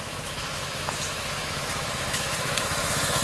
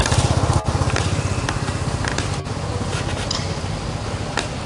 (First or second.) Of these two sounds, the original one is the second